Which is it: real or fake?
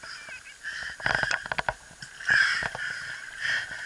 real